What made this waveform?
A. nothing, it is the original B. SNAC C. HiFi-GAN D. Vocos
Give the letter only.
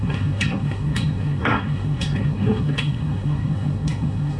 B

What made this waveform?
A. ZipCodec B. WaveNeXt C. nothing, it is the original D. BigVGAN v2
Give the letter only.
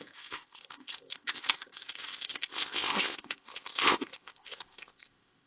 A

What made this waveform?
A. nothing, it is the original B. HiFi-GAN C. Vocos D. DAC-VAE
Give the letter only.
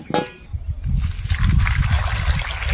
A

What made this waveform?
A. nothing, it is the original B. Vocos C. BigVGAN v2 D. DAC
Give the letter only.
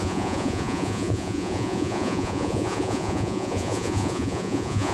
B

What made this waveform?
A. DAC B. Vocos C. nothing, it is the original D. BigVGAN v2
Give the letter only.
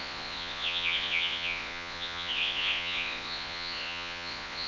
B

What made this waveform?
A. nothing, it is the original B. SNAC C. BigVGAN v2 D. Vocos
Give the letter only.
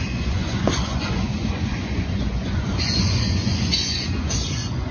D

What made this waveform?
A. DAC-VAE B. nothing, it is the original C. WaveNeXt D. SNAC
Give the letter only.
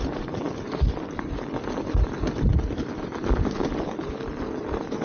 B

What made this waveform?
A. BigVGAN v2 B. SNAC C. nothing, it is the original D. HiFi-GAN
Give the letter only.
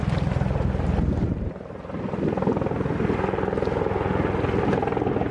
C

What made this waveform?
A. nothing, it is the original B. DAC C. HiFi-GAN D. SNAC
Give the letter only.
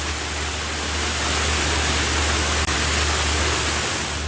A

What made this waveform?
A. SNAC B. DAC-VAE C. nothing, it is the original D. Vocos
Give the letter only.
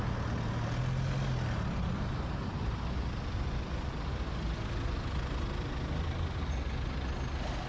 C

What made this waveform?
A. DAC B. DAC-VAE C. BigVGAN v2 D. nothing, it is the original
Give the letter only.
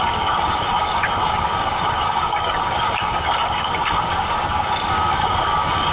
A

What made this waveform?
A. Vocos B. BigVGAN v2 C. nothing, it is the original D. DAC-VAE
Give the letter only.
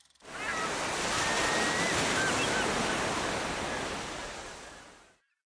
C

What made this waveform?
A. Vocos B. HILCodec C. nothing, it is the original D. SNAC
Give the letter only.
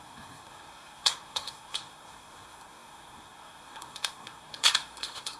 D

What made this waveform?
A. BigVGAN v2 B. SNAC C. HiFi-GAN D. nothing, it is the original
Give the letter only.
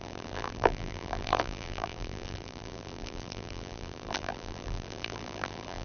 A